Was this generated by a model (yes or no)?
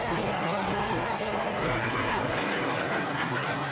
yes